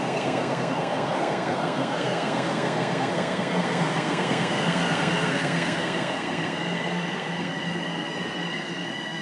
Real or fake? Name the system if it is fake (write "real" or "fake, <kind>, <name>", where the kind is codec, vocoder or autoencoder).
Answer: fake, codec, SNAC